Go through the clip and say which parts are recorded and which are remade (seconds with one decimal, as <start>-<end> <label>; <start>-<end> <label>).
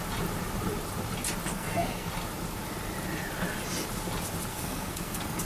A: 0.0-1.5 recorded; 1.5-2.1 remade; 2.1-4.5 recorded; 4.5-5.4 remade